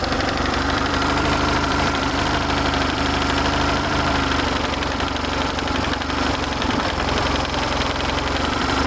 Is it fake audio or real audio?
fake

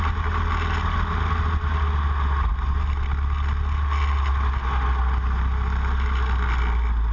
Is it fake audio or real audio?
real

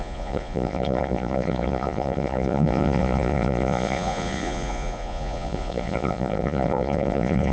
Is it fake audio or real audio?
fake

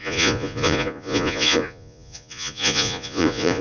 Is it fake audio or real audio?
fake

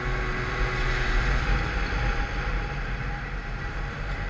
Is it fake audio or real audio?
real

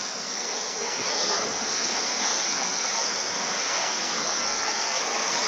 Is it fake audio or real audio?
fake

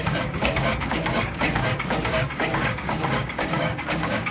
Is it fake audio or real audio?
fake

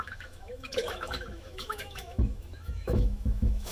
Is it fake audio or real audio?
fake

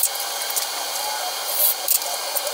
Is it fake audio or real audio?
real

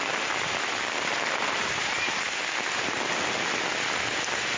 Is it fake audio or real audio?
real